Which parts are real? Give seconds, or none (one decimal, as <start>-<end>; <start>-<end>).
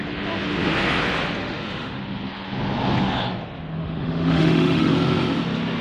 0.0-1.4; 2.0-3.8; 4.9-5.8